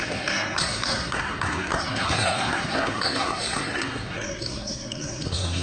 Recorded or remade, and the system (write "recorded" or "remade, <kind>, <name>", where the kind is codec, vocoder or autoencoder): remade, codec, SNAC